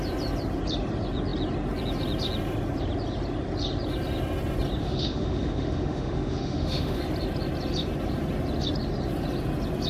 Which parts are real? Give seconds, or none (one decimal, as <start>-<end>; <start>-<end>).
0.0-4.8; 7.0-9.9